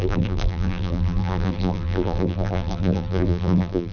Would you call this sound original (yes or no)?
no